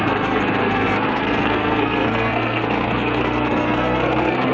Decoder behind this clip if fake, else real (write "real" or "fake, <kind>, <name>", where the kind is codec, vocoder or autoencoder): fake, codec, SNAC